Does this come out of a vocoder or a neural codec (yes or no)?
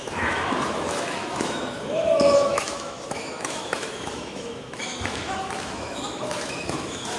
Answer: yes